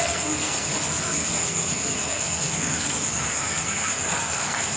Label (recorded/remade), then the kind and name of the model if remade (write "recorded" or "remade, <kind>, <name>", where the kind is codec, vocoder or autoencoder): remade, codec, SNAC